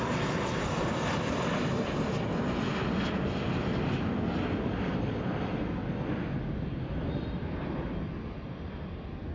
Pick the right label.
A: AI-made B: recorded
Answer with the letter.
B